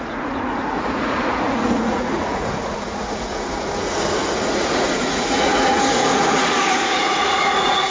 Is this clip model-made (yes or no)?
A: yes